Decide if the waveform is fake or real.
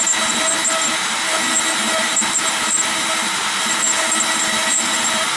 real